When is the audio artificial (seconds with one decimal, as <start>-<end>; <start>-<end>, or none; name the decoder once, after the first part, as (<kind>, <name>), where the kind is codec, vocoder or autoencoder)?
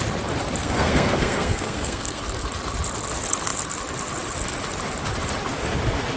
0.6-2.2 (codec, SNAC)